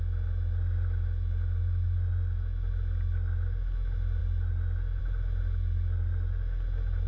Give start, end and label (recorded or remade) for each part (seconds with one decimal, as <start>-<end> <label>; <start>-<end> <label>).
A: 0.0-7.1 recorded